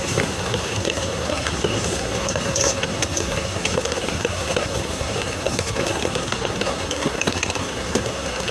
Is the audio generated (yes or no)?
yes